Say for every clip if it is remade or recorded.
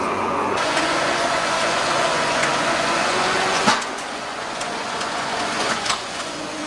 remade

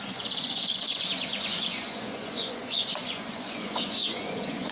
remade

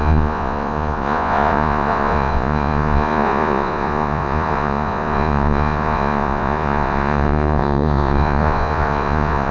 remade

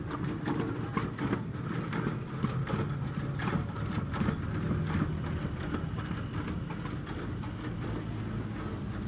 recorded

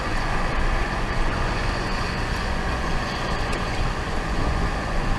remade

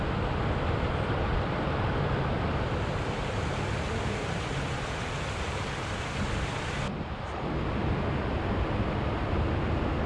recorded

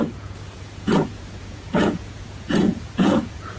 remade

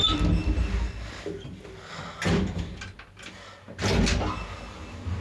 recorded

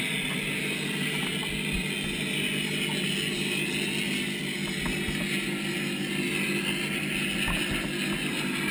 recorded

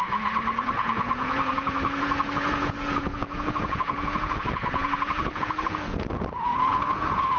remade